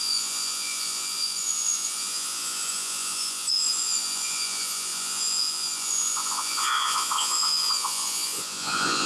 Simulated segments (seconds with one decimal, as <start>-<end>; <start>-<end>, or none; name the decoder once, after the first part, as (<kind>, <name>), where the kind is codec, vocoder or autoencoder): 0.0-9.1 (vocoder, Vocos)